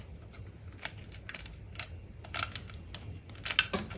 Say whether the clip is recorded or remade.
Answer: recorded